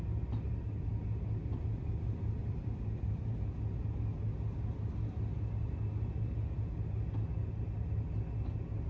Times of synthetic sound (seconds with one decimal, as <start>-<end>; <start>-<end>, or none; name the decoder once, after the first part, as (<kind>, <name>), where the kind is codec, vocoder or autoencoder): 2.4-3.5 (vocoder, BigVGAN v2)